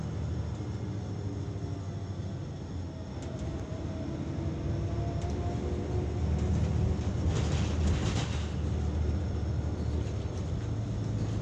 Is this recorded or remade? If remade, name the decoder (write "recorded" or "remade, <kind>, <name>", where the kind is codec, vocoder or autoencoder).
recorded